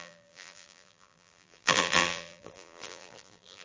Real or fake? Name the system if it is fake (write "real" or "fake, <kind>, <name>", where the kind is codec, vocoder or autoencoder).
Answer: fake, vocoder, BigVGAN v2